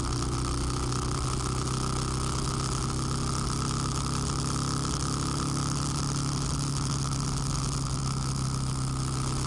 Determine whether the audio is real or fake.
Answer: real